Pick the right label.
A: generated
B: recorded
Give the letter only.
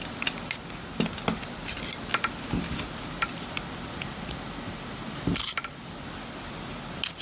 B